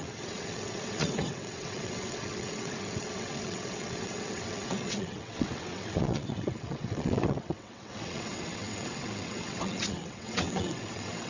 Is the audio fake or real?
fake